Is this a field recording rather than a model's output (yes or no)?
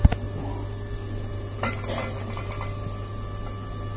yes